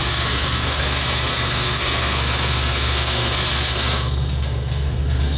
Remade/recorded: remade